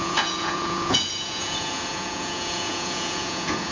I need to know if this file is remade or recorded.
remade